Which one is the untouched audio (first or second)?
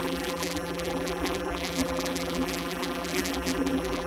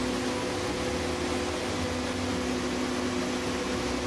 second